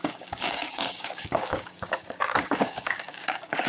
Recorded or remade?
remade